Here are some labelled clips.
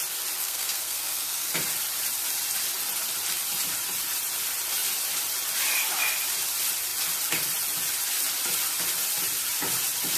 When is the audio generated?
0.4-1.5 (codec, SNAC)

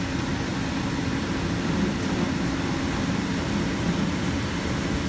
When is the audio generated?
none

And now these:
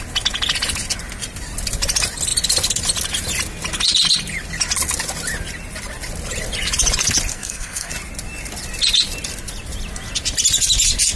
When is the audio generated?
7.3-7.9 (codec, SNAC)

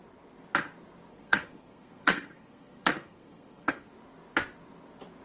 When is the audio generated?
1.1-3.9 (codec, SNAC)

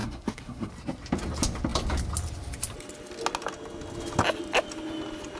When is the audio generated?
0.0-0.7 (codec, SNAC)